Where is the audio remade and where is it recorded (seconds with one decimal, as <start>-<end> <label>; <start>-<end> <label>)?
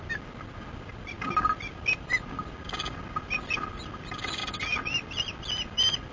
0.0-6.1 recorded